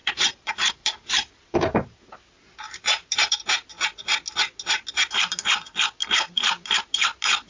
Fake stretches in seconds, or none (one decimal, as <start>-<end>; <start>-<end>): 0.0-3.7; 6.1-7.5